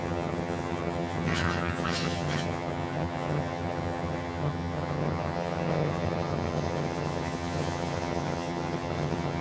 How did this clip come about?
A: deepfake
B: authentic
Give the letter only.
A